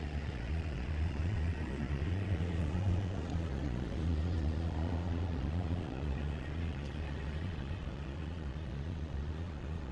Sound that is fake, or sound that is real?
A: fake